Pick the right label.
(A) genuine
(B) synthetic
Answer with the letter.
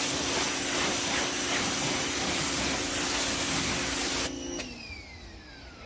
A